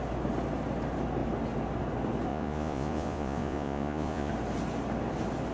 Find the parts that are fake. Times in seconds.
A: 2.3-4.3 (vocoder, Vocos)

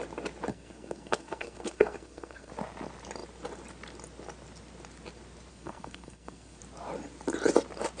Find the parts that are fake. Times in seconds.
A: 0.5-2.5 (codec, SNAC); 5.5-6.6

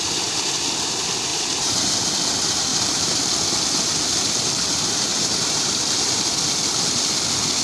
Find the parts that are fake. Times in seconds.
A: 1.3-1.9 (vocoder, BigVGAN v2); 2.7-3.2; 5.1-6.1

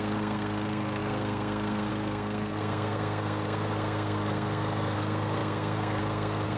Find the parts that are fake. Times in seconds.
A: 0.0-6.6 (codec, SNAC)

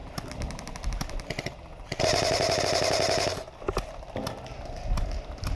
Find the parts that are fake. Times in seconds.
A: none

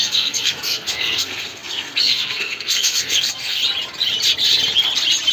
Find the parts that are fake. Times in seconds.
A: 0.0-3.6 (codec, SNAC)